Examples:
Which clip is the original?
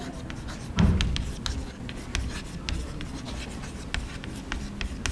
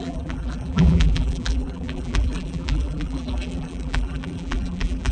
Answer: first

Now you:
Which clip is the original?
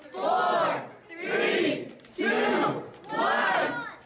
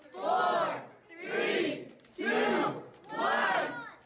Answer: second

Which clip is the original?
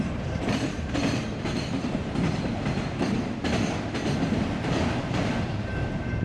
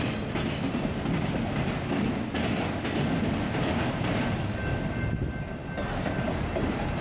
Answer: second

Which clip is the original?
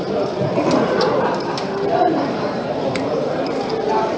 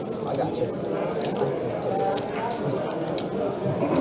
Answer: second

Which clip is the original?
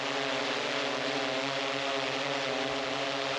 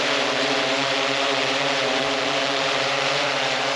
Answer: first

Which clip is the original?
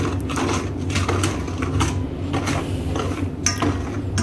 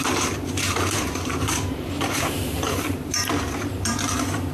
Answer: first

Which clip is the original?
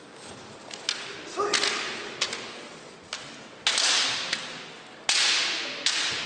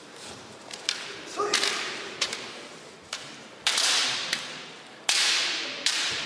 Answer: first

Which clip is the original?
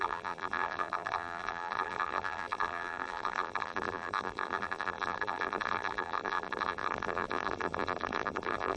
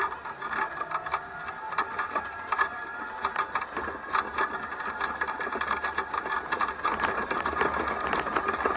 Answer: second